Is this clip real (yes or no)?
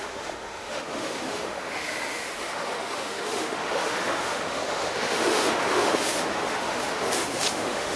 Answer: no